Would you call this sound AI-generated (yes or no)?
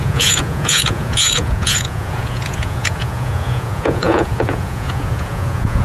yes